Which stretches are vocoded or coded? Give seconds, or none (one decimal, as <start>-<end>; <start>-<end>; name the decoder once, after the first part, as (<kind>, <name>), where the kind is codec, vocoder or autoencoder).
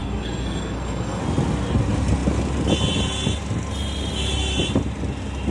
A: 0.0-1.2 (codec, SNAC)